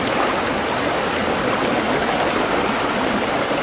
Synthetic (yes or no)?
no